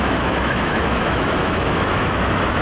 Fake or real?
fake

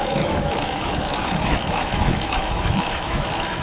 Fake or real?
fake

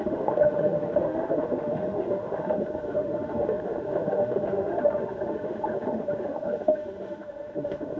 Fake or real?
fake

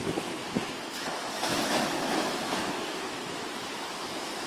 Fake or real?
fake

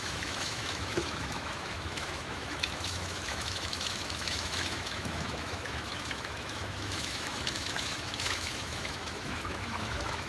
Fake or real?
fake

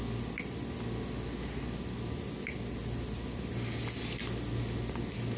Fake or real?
real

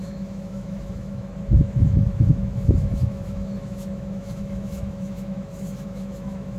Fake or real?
fake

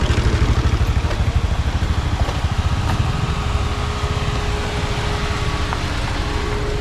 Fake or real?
real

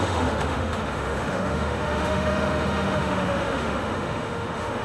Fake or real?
fake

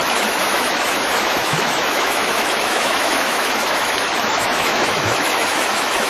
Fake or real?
fake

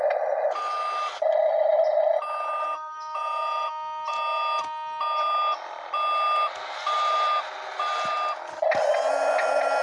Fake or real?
real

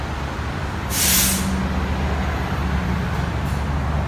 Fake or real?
real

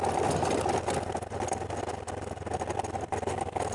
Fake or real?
real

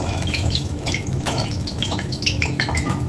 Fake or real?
fake